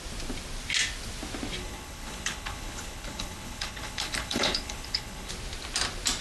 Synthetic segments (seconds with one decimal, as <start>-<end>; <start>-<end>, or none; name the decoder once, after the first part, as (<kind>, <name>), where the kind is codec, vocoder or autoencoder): 1.6-5.3 (codec, HILCodec)